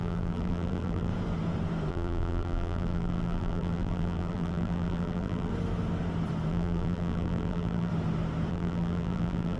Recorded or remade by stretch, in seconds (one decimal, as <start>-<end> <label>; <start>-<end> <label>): 0.0-1.1 remade; 1.1-1.9 recorded; 1.9-5.5 remade; 5.5-6.5 recorded; 6.5-7.9 remade; 7.9-8.5 recorded; 8.5-9.6 remade